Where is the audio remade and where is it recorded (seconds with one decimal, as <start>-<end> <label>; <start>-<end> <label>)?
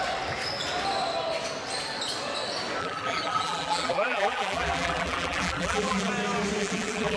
0.0-2.8 recorded; 2.8-6.1 remade; 6.1-6.6 recorded; 6.6-7.2 remade